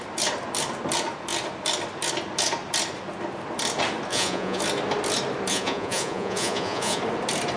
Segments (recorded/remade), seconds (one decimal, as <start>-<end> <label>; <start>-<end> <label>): 0.0-4.1 recorded; 4.1-4.6 remade; 4.6-5.5 recorded; 5.5-7.0 remade; 7.0-7.6 recorded